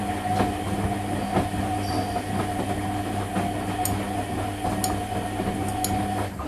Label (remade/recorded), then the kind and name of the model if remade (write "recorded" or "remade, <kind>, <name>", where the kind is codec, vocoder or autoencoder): recorded